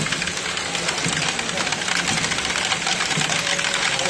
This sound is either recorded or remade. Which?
recorded